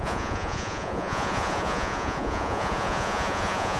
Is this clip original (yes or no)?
no